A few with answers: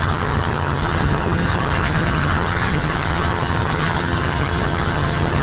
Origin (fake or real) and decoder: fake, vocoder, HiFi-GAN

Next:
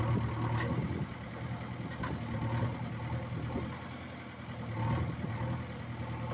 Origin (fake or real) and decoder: real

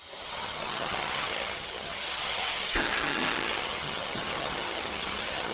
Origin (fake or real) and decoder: fake, vocoder, HiFi-GAN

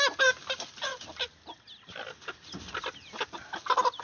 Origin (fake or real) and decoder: real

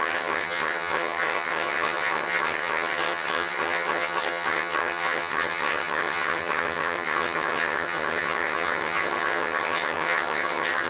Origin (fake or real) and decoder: fake, vocoder, HiFi-GAN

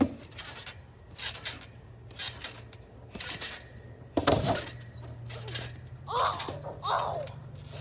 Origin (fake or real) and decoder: real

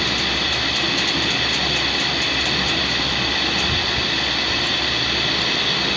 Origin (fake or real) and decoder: real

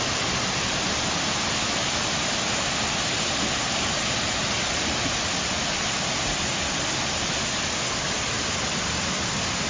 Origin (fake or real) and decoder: real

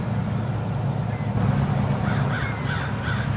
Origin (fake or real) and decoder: real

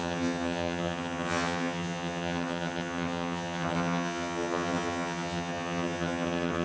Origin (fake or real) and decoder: fake, vocoder, HiFi-GAN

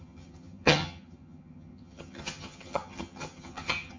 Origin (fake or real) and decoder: fake, vocoder, HiFi-GAN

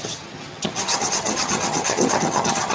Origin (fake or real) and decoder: fake, vocoder, HiFi-GAN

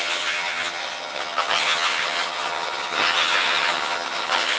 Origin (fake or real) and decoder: fake, vocoder, HiFi-GAN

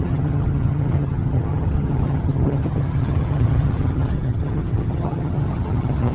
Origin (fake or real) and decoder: fake, vocoder, HiFi-GAN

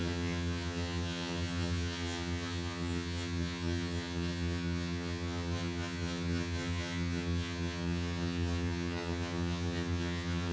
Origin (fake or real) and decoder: fake, vocoder, HiFi-GAN